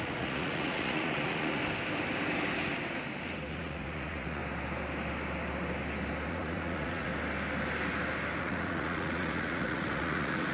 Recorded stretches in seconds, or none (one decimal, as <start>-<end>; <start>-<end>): 1.6-3.5; 4.4-6.3; 7.1-8.4